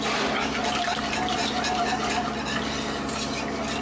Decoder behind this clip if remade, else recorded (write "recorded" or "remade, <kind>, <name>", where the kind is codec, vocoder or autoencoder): recorded